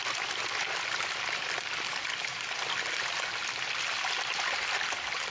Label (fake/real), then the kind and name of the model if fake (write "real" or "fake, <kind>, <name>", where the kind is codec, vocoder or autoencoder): real